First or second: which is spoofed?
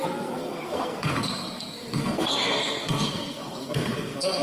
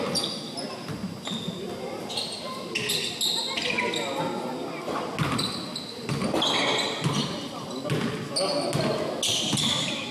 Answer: first